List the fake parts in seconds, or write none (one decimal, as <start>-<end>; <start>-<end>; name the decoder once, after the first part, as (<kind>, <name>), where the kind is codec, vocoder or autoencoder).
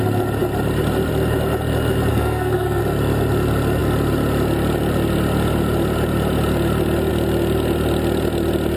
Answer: 2.1-2.8 (codec, SNAC)